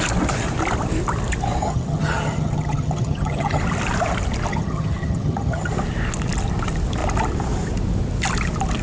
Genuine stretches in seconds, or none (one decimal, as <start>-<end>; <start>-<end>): 0.0-1.6; 3.6-4.5; 5.7-8.8